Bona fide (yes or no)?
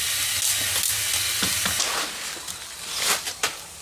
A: yes